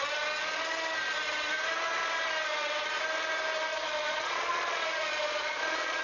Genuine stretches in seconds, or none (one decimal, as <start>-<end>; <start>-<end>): 0.0-3.7